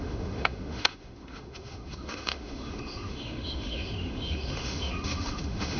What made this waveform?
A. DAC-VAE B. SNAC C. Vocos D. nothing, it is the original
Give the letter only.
A